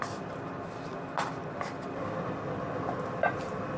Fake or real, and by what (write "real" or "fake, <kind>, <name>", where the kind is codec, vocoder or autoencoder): real